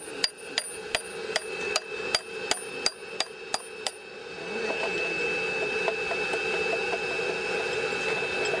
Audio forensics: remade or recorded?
recorded